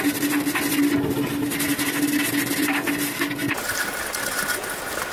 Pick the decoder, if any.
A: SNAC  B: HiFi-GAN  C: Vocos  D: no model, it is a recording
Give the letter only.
D